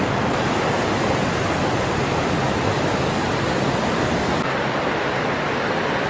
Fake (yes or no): no